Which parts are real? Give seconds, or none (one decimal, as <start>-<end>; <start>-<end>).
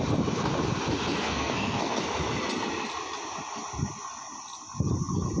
0.0-1.2; 2.0-5.4